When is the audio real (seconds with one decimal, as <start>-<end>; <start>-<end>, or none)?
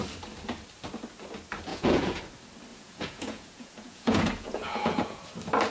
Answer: 0.0-1.7; 2.2-2.7; 5.2-5.7